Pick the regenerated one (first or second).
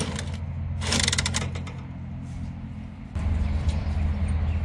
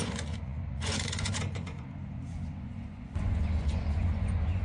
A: second